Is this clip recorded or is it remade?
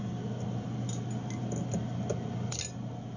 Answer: recorded